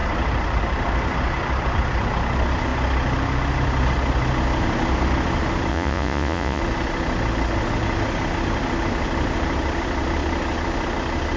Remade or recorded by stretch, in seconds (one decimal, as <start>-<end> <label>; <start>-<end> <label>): 0.0-5.7 recorded; 5.7-6.6 remade; 6.6-11.4 recorded

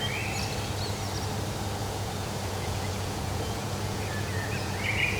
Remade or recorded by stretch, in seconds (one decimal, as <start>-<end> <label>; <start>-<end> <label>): 0.0-1.8 recorded; 1.8-5.2 remade

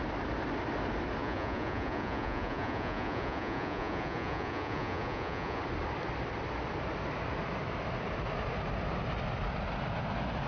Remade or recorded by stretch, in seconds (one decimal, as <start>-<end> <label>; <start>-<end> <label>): 0.0-1.2 recorded; 1.2-5.6 remade; 5.6-10.5 recorded

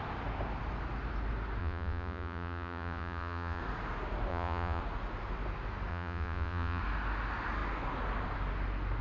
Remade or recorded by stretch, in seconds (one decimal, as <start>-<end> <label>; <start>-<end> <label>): 0.0-1.6 recorded; 1.6-3.6 remade; 3.6-4.3 recorded; 4.3-4.8 remade; 4.8-5.9 recorded; 5.9-6.8 remade; 6.8-9.0 recorded

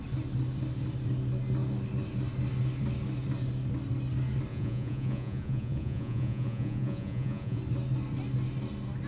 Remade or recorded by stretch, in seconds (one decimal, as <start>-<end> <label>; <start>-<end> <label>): 0.0-4.5 recorded; 4.5-7.6 remade; 7.6-9.1 recorded

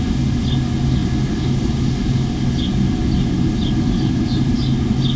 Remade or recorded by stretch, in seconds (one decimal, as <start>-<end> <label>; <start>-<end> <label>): 0.0-5.2 recorded

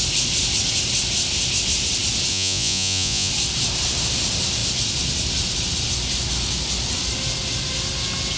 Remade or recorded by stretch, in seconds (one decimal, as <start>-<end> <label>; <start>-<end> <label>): 0.0-2.3 recorded; 2.3-3.3 remade; 3.3-8.4 recorded